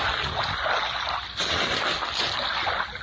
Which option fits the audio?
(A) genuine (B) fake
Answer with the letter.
A